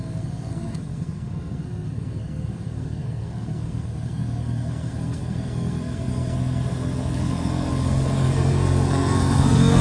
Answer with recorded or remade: remade